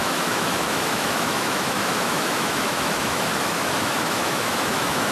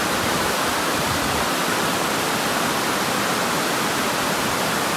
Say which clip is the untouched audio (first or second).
second